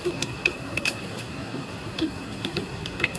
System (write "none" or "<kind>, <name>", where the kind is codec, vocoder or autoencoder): codec, SNAC